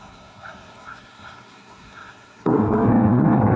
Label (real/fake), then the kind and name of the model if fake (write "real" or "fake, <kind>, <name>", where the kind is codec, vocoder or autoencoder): fake, codec, SNAC